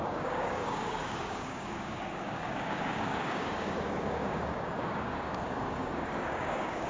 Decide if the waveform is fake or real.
fake